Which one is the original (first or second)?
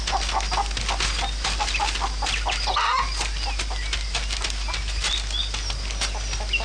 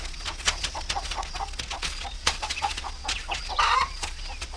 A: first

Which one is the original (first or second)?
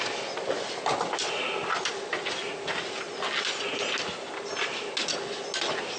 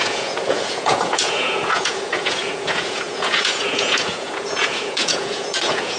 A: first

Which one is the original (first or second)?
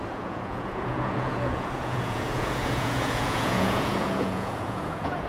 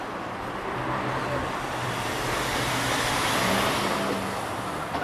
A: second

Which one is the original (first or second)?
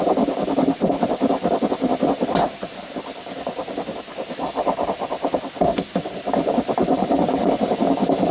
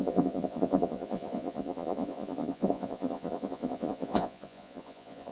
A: first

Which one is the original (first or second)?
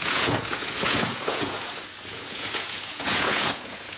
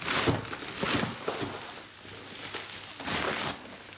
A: second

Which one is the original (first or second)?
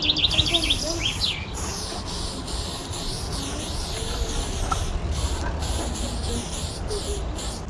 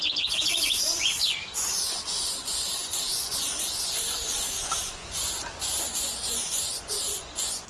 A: first